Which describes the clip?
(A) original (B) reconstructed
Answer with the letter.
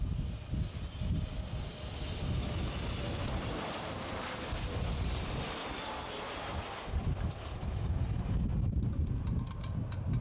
A